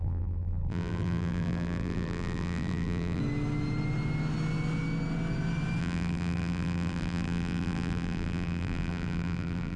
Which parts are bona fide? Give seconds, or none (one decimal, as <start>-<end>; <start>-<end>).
3.2-5.8